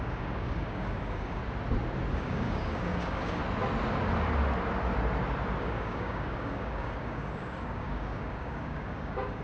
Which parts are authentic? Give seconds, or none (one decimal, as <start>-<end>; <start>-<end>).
1.4-2.1; 3.4-5.6